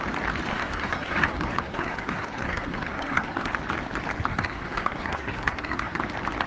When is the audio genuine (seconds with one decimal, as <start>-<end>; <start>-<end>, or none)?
0.0-0.5; 3.5-4.3; 6.0-6.5